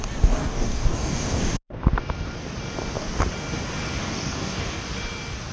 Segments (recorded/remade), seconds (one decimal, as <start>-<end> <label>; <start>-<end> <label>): 0.0-0.4 recorded; 0.4-1.4 remade; 1.4-4.0 recorded; 4.0-4.8 remade; 4.8-5.5 recorded